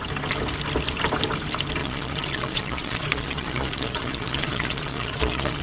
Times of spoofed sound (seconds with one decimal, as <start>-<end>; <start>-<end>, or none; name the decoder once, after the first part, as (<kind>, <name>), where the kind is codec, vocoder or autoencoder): 1.8-5.6 (vocoder, Vocos)